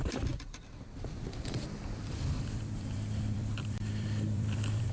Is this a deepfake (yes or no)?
yes